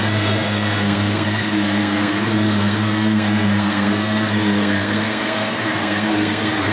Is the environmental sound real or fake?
fake